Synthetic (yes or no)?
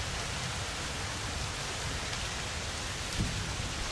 no